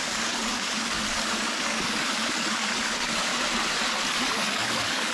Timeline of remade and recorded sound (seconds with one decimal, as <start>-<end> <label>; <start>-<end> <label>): 0.0-3.3 remade; 3.3-4.2 recorded; 4.2-5.1 remade